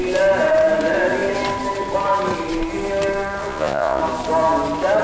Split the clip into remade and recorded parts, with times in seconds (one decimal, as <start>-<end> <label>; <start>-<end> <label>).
0.0-3.4 recorded; 3.4-4.0 remade; 4.0-5.0 recorded